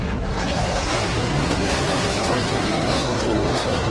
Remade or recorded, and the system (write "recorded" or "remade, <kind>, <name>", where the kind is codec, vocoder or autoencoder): remade, codec, SNAC